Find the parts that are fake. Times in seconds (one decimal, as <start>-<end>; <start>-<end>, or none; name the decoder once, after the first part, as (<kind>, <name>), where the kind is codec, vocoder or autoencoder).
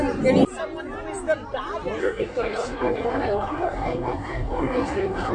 2.0-5.3 (codec, SNAC)